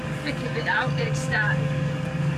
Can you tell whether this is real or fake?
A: fake